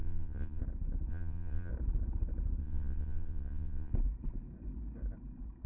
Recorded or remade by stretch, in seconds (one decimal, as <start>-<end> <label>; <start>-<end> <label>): 0.0-0.6 remade; 0.6-1.1 recorded; 1.1-1.7 remade; 1.7-2.6 recorded; 2.6-3.9 remade; 3.9-5.7 recorded